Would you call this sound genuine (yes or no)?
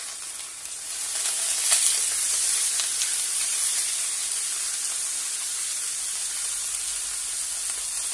yes